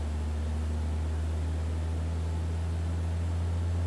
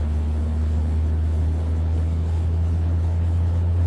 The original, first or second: first